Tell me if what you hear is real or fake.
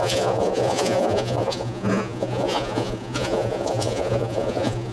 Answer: fake